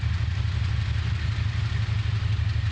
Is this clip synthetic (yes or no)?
no